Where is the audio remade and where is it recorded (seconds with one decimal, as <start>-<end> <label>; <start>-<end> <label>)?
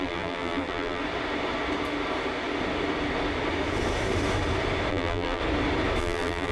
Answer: 0.0-1.0 remade; 1.0-4.9 recorded; 4.9-5.4 remade; 5.4-6.0 recorded; 6.0-6.5 remade